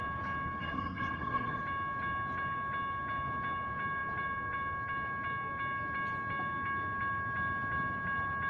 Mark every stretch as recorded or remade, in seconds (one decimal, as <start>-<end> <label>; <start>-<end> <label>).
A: 0.0-0.6 recorded; 0.6-1.6 remade; 1.6-8.5 recorded